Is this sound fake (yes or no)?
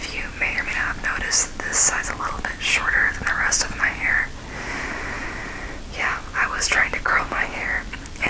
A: no